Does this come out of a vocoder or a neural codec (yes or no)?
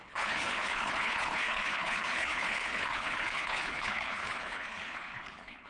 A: yes